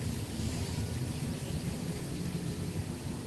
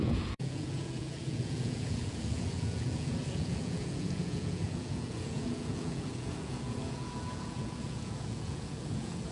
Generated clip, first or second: second